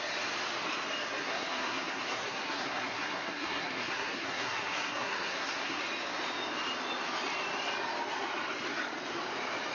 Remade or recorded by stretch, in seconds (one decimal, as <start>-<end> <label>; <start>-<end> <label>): 0.0-1.2 recorded; 1.2-5.8 remade; 5.8-9.7 recorded